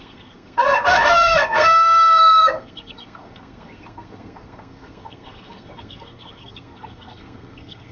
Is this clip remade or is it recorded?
remade